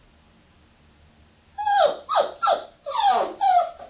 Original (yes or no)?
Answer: yes